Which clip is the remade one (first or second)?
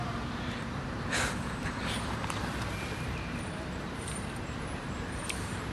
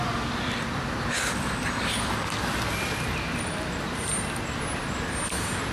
first